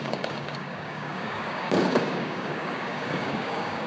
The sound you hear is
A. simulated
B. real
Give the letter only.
A